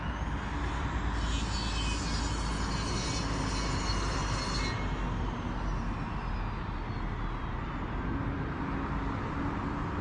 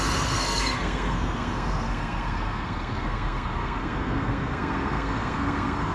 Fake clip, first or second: second